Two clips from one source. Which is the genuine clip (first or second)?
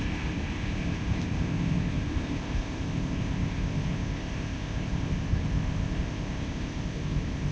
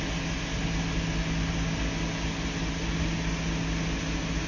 second